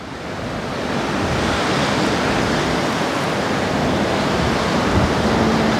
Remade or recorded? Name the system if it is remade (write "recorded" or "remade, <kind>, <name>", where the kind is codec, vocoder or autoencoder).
recorded